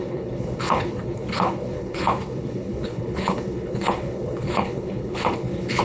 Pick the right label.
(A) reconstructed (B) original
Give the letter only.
A